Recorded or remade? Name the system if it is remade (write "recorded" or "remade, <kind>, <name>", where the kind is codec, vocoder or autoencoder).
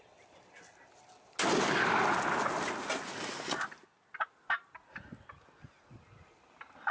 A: recorded